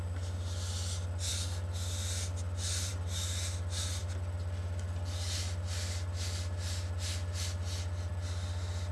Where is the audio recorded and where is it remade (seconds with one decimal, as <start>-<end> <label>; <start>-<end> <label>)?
0.0-8.9 recorded